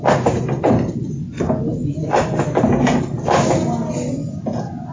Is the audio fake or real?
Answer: real